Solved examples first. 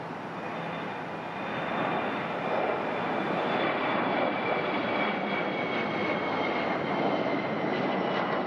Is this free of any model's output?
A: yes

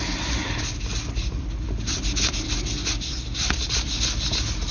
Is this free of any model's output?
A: yes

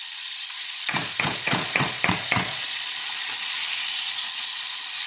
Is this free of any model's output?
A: no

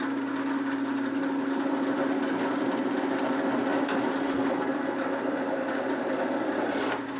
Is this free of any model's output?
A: yes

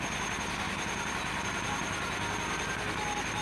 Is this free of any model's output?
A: yes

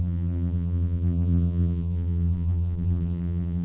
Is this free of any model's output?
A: no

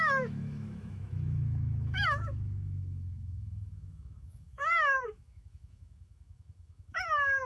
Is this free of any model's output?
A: no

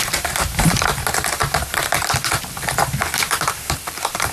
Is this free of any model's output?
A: no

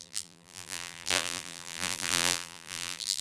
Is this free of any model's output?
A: no